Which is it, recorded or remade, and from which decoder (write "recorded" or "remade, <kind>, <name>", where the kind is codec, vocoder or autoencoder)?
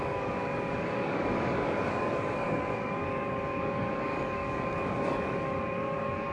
remade, codec, DAC